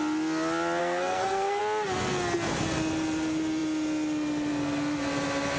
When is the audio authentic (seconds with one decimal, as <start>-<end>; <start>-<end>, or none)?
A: 0.0-0.8; 1.6-5.6